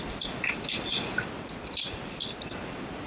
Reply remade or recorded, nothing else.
recorded